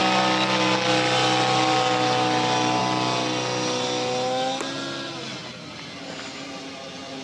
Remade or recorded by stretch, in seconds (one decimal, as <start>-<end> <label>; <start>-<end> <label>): 0.0-7.2 recorded